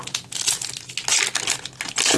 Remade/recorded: recorded